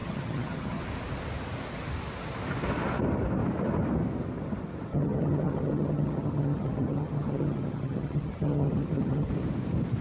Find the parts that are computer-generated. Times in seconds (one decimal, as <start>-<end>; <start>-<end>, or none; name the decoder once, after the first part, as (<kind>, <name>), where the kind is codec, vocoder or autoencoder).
0.0-0.8 (vocoder, HiFi-GAN); 4.9-9.3